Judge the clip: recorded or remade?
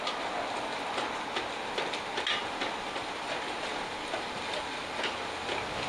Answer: recorded